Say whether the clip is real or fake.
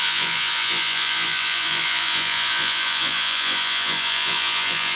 fake